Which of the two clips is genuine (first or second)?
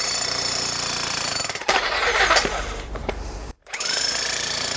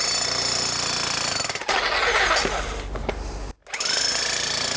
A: second